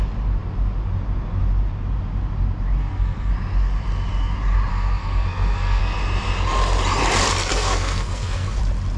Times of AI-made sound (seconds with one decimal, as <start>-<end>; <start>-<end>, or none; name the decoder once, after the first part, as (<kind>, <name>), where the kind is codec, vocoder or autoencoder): 2.8-3.3 (codec, SNAC); 4.7-5.8; 7.5-8.6